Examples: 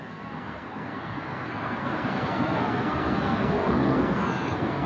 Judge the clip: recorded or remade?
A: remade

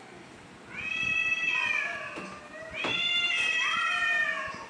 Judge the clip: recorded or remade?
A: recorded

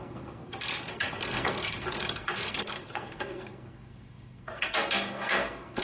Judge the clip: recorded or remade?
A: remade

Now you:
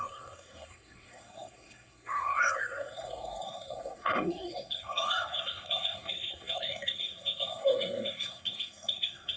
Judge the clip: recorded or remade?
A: remade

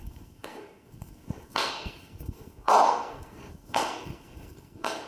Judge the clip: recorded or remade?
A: remade